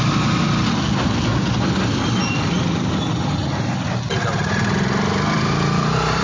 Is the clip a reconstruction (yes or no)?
no